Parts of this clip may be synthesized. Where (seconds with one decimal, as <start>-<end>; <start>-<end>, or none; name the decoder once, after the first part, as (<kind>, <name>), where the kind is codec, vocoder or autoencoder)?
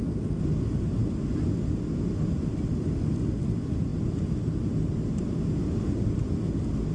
none